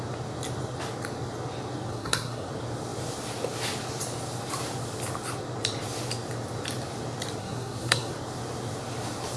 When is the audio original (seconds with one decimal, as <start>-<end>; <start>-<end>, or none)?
0.0-1.9; 2.5-7.4; 8.1-9.4